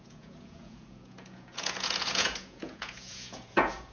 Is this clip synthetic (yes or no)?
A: yes